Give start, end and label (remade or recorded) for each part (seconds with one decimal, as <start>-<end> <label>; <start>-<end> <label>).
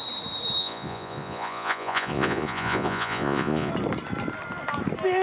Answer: 0.0-0.6 recorded; 0.6-3.7 remade; 3.7-5.2 recorded